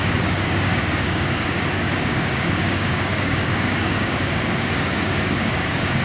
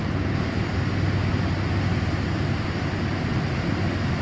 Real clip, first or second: second